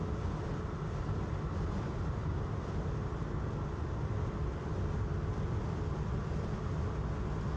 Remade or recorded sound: recorded